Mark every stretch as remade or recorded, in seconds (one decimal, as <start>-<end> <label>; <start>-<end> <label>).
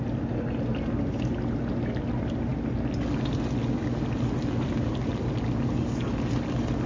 0.0-6.9 recorded